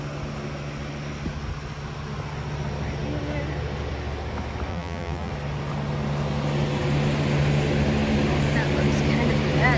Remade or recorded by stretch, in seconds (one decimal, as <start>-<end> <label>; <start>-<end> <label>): 0.0-4.7 recorded; 4.7-5.3 remade; 5.3-9.8 recorded